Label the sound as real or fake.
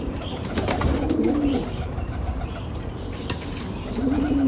fake